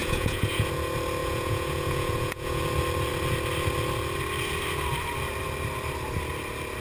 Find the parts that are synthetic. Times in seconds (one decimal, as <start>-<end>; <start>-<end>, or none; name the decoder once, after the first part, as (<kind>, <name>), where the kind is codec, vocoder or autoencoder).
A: 0.0-0.7 (vocoder, Vocos); 1.2-2.6